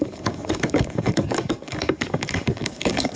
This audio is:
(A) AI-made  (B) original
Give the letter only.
A